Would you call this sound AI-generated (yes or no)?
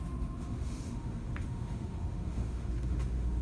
yes